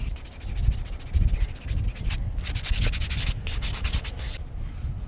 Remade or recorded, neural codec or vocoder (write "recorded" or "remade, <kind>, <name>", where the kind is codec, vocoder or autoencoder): recorded